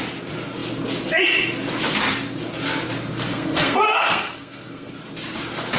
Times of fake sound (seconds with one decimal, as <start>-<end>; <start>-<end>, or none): 3.3-4.9